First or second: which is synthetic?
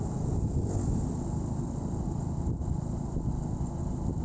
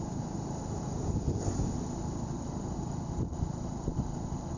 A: second